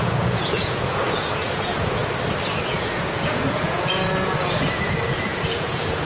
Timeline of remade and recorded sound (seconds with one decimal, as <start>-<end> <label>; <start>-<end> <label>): 0.0-2.0 remade; 2.0-2.6 recorded; 2.6-6.0 remade